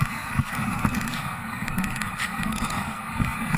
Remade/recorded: remade